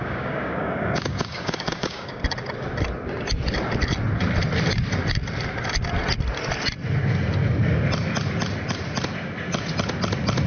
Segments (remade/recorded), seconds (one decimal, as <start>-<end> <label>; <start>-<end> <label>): 0.0-2.2 remade; 2.2-10.5 recorded